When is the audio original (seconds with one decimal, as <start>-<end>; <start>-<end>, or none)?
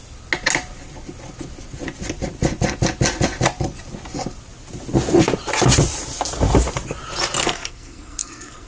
0.0-7.4